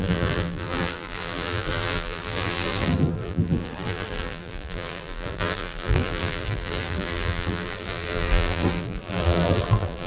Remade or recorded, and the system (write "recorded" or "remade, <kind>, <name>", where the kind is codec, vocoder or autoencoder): remade, vocoder, BigVGAN v2